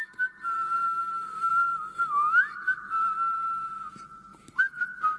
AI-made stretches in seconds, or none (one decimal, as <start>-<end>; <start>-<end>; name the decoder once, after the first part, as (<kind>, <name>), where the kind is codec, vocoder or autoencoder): none